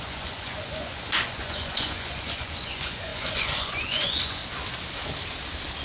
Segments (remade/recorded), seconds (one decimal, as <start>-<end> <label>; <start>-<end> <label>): 0.0-4.4 remade; 4.4-5.8 recorded

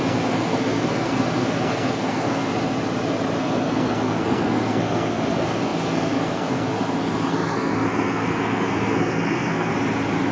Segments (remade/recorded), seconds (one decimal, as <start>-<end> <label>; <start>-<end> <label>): 0.0-2.5 remade; 2.5-3.4 recorded; 3.4-9.7 remade; 9.7-10.3 recorded

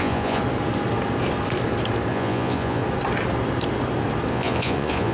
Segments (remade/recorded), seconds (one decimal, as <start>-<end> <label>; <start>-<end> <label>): 0.0-0.4 remade; 0.4-2.1 recorded; 2.1-2.8 remade; 2.8-4.3 recorded; 4.3-5.1 remade

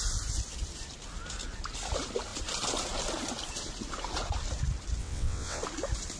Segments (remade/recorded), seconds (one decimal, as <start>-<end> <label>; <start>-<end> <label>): 0.0-5.0 recorded; 5.0-5.6 remade; 5.6-6.2 recorded

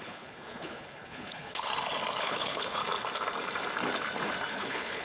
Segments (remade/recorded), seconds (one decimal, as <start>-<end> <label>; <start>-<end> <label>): 0.0-1.7 remade; 1.7-2.2 recorded; 2.2-2.8 remade; 2.8-4.5 recorded; 4.5-5.0 remade